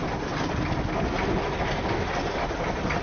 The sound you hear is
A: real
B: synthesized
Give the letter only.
A